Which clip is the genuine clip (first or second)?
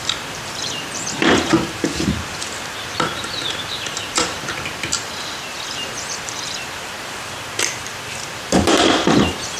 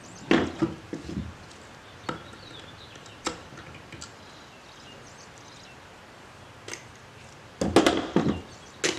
second